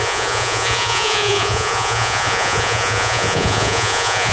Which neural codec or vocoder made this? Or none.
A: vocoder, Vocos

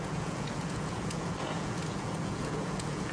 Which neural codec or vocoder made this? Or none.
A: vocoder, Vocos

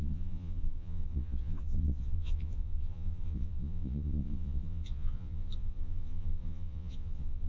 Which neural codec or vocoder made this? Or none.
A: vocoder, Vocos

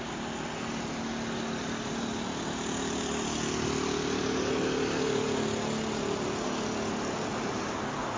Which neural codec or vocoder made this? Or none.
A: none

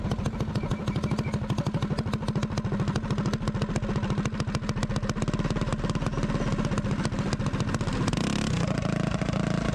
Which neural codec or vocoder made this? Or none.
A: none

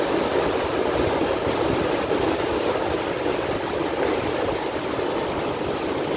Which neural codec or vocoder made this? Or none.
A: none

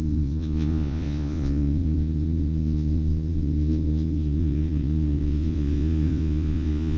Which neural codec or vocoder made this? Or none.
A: vocoder, Vocos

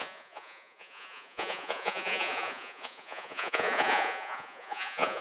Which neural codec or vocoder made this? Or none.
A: vocoder, Vocos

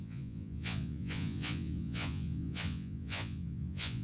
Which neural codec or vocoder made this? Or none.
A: vocoder, Vocos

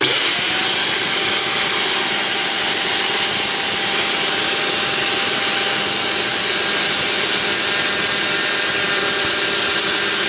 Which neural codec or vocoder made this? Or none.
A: none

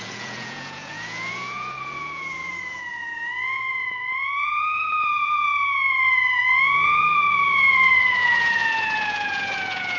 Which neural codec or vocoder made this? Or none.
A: vocoder, Vocos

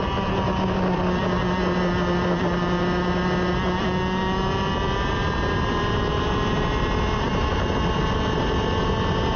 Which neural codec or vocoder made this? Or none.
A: none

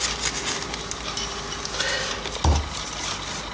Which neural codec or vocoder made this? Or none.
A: none